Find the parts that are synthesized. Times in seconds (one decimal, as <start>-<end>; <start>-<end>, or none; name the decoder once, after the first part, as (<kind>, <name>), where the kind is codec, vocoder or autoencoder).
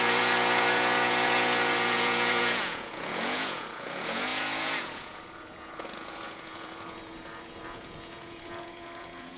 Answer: 0.0-9.4 (vocoder, Vocos)